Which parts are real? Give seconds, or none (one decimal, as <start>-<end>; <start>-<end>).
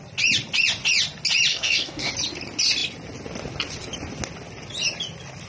0.0-1.5; 2.1-5.5